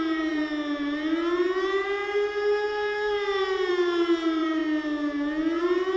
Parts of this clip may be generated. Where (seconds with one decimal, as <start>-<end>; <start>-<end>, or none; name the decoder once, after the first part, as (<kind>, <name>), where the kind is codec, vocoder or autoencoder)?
0.0-4.6 (vocoder, BigVGAN v2); 5.6-6.0

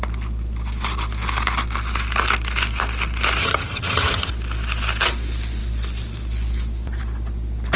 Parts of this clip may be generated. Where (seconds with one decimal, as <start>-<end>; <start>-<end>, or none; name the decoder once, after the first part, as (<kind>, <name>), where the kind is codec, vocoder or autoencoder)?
3.4-4.3 (vocoder, HiFi-GAN)

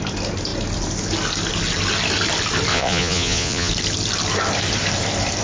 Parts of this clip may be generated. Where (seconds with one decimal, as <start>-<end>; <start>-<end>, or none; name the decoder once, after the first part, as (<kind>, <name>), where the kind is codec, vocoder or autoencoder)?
2.7-3.7 (vocoder, Vocos)

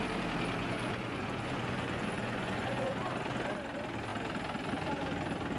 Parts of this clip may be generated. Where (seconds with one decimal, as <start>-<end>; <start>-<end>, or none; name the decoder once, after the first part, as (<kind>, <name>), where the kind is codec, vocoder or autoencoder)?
0.6-3.0 (vocoder, Vocos)

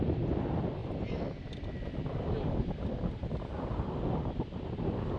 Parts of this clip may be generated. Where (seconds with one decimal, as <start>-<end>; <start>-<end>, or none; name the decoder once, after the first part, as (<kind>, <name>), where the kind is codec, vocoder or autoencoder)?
0.8-3.9 (vocoder, BigVGAN v2)